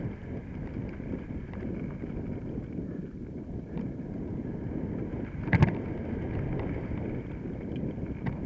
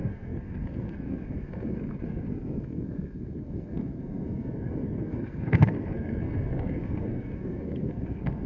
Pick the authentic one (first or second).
first